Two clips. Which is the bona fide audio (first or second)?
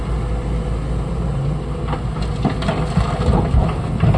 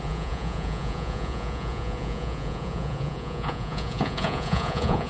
first